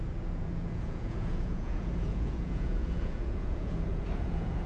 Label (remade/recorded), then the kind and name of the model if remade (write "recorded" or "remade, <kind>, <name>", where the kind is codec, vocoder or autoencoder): remade, vocoder, Vocos